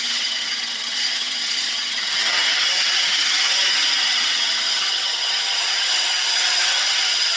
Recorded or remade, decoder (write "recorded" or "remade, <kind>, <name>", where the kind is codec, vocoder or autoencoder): remade, vocoder, HiFi-GAN